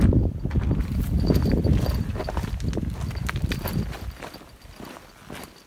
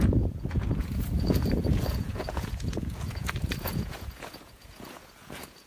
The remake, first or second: second